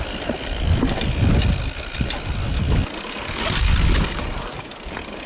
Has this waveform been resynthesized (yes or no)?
no